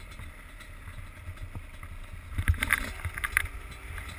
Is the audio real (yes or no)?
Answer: yes